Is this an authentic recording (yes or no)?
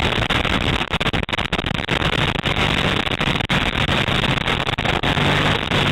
yes